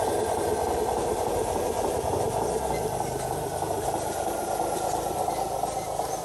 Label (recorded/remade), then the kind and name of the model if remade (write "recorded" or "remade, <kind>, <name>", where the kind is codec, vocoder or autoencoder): recorded